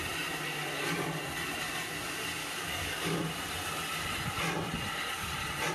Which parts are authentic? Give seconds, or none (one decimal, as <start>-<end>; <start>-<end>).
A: 0.0-2.4; 3.2-5.7